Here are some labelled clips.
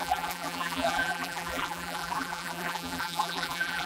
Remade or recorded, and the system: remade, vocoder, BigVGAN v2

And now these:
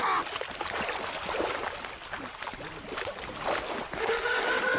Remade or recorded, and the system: recorded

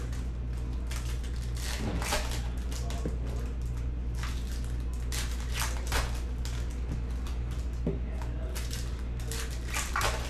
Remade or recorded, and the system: recorded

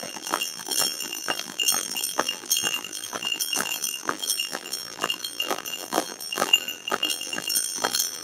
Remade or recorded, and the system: remade, vocoder, BigVGAN v2